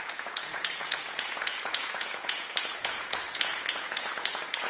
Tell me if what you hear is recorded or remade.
remade